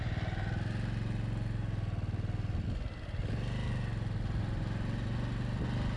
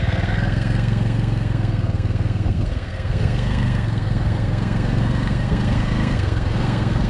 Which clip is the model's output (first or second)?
second